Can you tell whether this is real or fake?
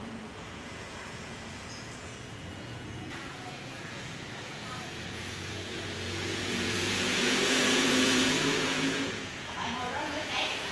fake